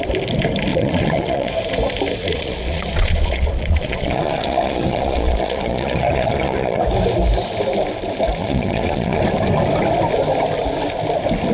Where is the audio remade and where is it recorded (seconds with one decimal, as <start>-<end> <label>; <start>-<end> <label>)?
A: 0.0-0.7 recorded; 0.7-1.5 remade; 1.5-2.2 recorded; 2.2-6.8 remade; 6.8-8.4 recorded; 8.4-9.2 remade; 9.2-11.5 recorded

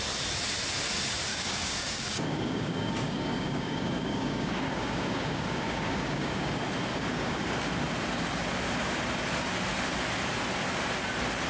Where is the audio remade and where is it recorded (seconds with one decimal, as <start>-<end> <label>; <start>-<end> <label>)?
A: 0.0-1.3 recorded; 1.3-6.5 remade; 6.5-6.9 recorded; 6.9-7.5 remade; 7.5-11.5 recorded

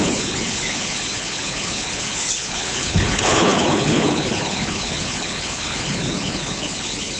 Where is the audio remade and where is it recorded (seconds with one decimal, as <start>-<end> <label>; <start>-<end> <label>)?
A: 0.0-7.2 remade

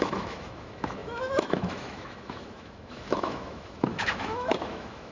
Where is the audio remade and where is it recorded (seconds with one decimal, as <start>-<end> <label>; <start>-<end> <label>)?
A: 0.0-5.1 remade

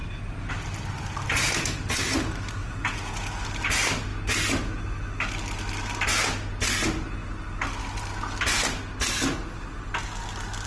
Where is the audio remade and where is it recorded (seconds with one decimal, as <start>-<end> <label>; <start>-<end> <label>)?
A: 0.0-2.6 recorded; 2.6-3.4 remade; 3.4-10.7 recorded

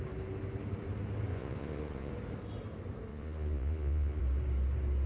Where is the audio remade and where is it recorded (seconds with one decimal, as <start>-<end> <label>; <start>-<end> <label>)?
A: 0.0-1.3 recorded; 1.3-2.1 remade; 2.1-3.1 recorded; 3.1-4.2 remade; 4.2-5.1 recorded

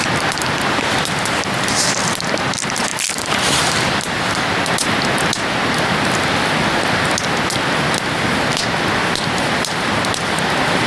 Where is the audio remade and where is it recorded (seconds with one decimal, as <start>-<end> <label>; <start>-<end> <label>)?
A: 0.0-10.9 recorded

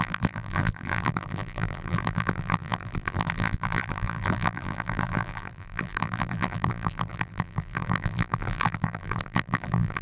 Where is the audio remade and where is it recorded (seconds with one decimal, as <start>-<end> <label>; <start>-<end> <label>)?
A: 0.0-10.0 remade